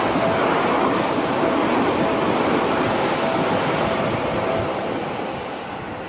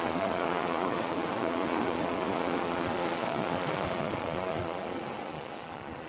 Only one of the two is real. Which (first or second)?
first